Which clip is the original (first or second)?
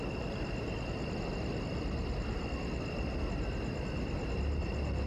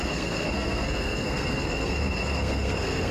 first